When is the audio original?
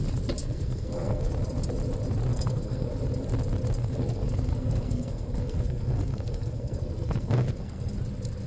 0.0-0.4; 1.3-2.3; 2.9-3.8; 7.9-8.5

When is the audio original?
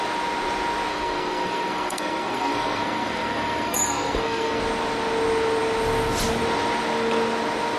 0.0-0.9; 4.6-7.8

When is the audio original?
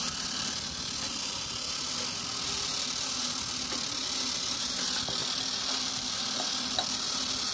0.0-7.5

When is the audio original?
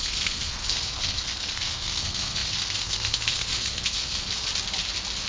4.5-5.3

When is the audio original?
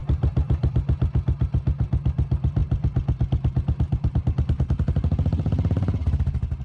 0.0-6.6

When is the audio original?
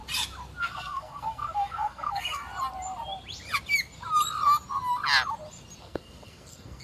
0.0-0.6; 2.4-5.8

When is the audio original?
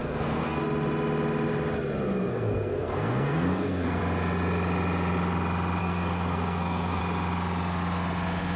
0.6-2.3; 4.0-5.8; 7.0-8.6